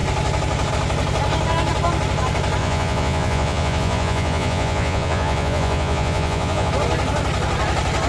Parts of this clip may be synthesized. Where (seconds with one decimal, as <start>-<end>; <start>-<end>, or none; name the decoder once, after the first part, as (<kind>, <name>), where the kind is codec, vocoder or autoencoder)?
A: 2.6-6.7 (vocoder, Vocos)